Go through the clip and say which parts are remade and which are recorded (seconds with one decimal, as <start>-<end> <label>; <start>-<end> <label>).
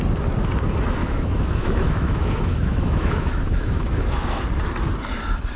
0.0-1.0 recorded; 1.0-4.4 remade; 4.4-5.6 recorded